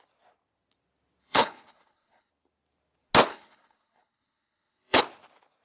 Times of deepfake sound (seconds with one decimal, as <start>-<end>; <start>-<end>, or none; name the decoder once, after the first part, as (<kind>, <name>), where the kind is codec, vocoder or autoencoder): 1.2-2.3 (codec, HILCodec); 3.3-5.0